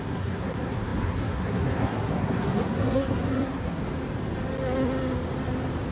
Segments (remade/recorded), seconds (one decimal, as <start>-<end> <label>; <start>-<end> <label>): 0.0-3.8 remade; 3.8-5.9 recorded